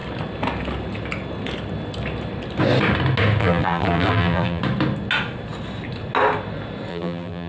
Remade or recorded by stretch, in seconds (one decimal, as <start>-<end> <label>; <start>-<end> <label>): 0.0-3.4 recorded; 3.4-4.6 remade; 4.6-6.9 recorded; 6.9-7.5 remade